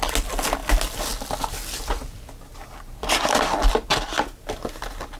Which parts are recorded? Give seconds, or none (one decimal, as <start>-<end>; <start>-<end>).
0.0-5.2